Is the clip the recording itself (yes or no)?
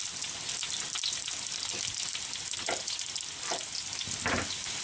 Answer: yes